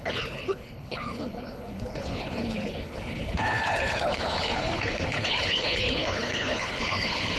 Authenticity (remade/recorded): remade